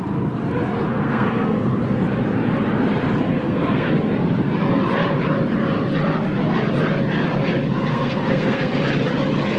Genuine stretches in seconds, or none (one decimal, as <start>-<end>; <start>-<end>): 0.0-0.9; 1.7-3.4; 3.9-7.9; 8.8-9.6